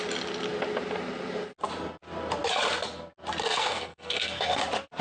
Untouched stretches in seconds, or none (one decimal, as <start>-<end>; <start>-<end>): 0.0-3.4; 4.6-5.0